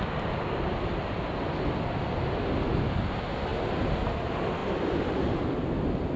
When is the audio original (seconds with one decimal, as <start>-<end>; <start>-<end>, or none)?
0.0-6.2